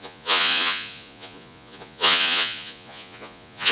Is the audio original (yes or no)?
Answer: no